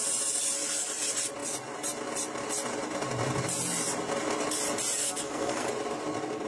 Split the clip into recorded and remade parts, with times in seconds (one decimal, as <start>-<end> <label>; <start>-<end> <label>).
0.0-5.0 recorded; 5.0-5.7 remade; 5.7-6.5 recorded